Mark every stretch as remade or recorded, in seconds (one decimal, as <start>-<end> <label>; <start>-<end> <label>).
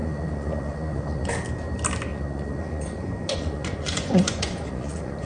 0.0-1.3 remade; 1.3-2.1 recorded; 2.1-5.3 remade